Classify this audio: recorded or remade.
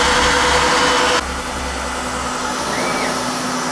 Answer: recorded